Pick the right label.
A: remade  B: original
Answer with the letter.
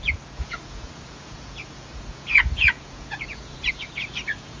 A